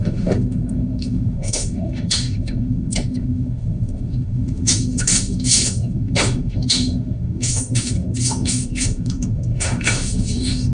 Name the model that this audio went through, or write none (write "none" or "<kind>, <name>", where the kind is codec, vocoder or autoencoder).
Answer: autoencoder, DAC-VAE